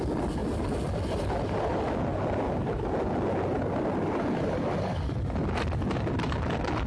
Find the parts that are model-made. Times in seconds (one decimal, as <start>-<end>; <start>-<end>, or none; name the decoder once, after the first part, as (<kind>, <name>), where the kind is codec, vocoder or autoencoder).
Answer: none